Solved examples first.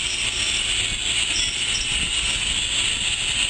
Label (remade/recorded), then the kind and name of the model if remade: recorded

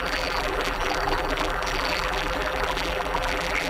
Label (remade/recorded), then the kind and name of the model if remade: remade, vocoder, BigVGAN v2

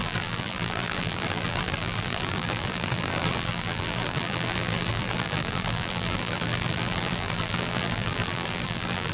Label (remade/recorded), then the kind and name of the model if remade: remade, vocoder, BigVGAN v2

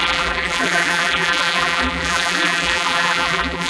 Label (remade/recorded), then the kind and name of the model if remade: remade, vocoder, BigVGAN v2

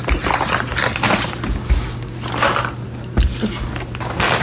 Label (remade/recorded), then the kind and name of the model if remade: recorded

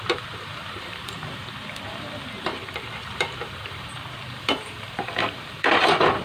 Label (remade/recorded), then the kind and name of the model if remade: remade, vocoder, BigVGAN v2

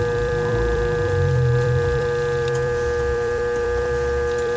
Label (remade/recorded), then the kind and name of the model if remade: remade, vocoder, BigVGAN v2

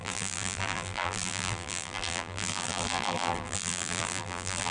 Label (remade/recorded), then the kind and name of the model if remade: remade, vocoder, BigVGAN v2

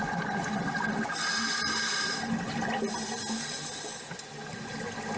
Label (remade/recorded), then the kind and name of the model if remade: recorded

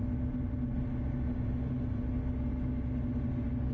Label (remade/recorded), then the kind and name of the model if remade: recorded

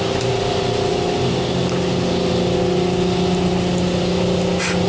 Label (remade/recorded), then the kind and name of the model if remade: recorded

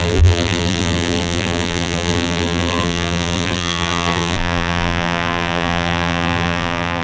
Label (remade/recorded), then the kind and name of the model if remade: remade, vocoder, BigVGAN v2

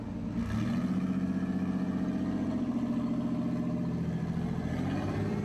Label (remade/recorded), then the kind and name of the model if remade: recorded